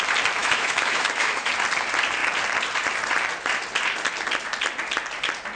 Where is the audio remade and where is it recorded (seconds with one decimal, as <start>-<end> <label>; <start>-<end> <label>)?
0.0-0.4 recorded; 0.4-1.5 remade; 1.5-5.6 recorded